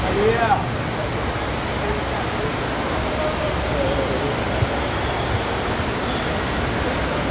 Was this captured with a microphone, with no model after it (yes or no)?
yes